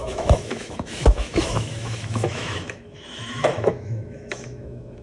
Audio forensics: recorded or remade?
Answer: remade